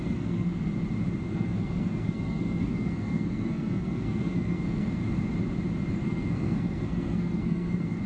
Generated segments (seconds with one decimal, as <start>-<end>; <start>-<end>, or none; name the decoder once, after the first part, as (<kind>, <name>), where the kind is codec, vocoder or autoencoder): 0.0-0.7 (codec, SNAC); 1.3-5.0; 5.9-8.1